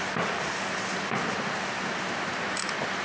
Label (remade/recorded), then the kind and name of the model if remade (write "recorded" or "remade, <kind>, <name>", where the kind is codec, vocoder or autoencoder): recorded